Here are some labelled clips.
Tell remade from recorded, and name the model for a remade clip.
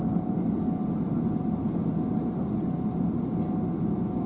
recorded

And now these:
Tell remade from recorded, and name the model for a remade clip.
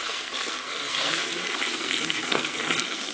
remade, codec, SNAC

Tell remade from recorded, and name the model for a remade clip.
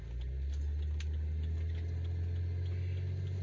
recorded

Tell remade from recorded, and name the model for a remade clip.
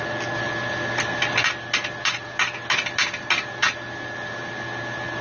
recorded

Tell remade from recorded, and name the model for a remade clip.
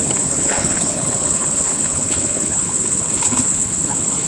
remade, codec, HILCodec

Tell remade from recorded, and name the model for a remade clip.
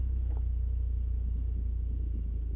recorded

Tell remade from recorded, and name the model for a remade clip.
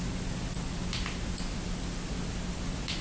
recorded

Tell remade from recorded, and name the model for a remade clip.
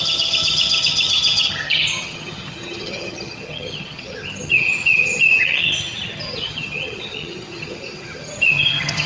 remade, vocoder, HiFi-GAN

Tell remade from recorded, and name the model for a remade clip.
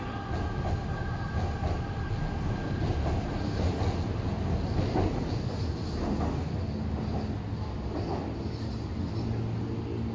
recorded